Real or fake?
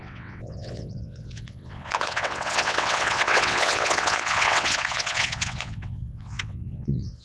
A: fake